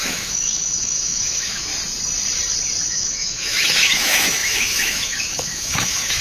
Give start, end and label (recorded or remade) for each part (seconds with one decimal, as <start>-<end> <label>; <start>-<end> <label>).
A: 0.0-1.7 remade; 1.7-2.9 recorded; 2.9-6.2 remade